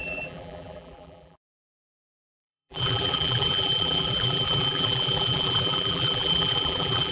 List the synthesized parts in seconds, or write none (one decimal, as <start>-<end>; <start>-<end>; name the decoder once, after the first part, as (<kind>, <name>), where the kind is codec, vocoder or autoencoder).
0.0-7.1 (vocoder, BigVGAN v2)